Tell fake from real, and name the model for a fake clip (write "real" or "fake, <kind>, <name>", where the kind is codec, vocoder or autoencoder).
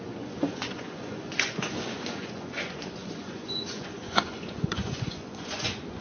fake, vocoder, Vocos